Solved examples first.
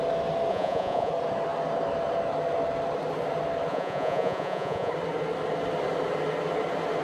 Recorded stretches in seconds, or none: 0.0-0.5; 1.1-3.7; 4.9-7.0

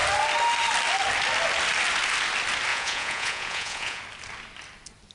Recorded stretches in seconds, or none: 0.0-2.7; 4.0-5.1

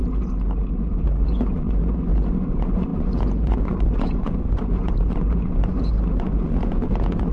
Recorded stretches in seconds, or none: 0.0-0.8

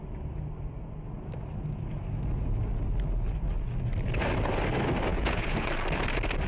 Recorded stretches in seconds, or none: 0.0-5.1; 5.7-6.5

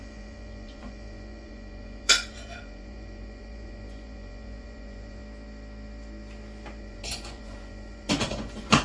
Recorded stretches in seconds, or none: 5.2-6.8

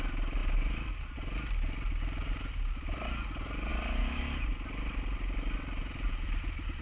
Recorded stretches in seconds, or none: 0.0-6.8

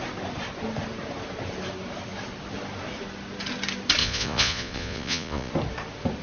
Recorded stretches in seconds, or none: 0.0-4.0; 5.5-6.2

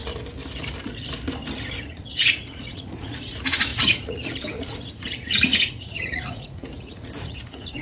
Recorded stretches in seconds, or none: 0.0-1.8